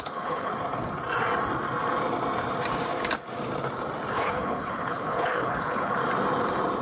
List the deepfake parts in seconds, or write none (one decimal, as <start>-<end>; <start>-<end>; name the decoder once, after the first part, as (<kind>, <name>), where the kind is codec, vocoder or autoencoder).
0.0-0.5 (codec, HILCodec); 4.1-6.0